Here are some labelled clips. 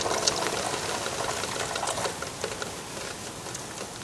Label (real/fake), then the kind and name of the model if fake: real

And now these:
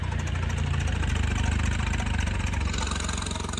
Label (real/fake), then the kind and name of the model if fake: real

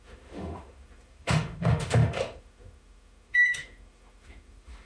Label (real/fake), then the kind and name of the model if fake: fake, autoencoder, DAC-VAE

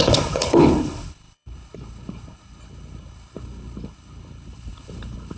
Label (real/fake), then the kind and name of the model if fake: fake, codec, HILCodec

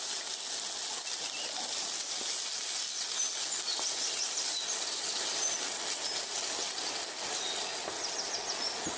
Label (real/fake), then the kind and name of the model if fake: real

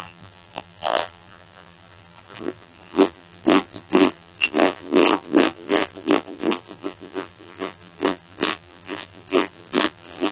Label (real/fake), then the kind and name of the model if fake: fake, vocoder, BigVGAN v2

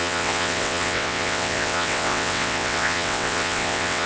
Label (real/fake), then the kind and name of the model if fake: fake, vocoder, WaveNeXt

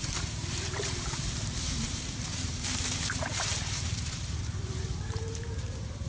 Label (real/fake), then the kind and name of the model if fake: fake, vocoder, BigVGAN v2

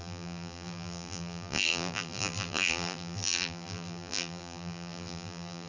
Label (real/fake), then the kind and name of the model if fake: fake, vocoder, BigVGAN v2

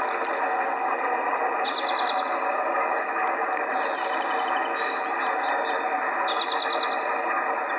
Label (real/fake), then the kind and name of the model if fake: real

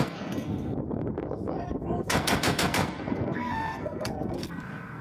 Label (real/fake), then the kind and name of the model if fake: fake, codec, SNAC